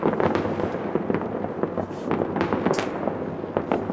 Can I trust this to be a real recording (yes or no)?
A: yes